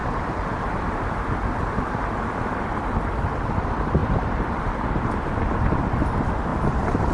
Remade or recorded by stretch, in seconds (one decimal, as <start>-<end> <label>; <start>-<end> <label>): 0.0-1.1 remade; 1.1-4.0 recorded; 4.0-5.8 remade; 5.8-6.5 recorded; 6.5-7.1 remade